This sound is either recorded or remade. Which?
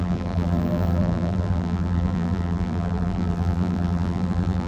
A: remade